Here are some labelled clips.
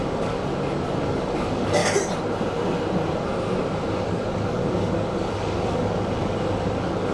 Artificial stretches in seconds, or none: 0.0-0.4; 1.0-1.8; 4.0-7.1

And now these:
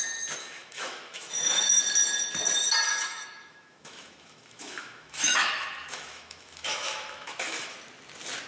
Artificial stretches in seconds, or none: 0.4-1.8; 2.9-7.8

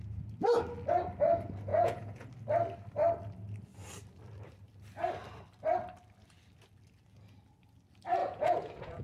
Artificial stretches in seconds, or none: 1.7-2.3; 8.2-9.0

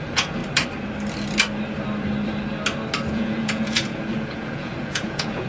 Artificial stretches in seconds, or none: 0.0-0.4; 3.1-5.5